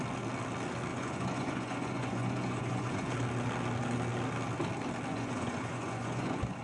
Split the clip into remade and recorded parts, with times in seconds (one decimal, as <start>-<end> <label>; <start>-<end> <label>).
0.0-0.9 recorded; 0.9-3.1 remade; 3.1-5.1 recorded; 5.1-6.6 remade